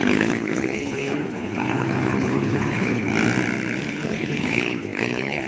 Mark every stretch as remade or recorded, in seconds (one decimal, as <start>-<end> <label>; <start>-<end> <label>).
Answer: 0.0-3.1 remade; 3.1-3.9 recorded; 3.9-5.5 remade